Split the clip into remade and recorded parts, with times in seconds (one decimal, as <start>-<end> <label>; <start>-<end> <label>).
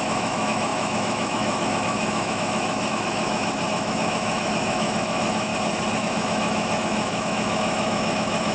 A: 0.0-5.5 remade; 5.5-6.0 recorded; 6.0-8.5 remade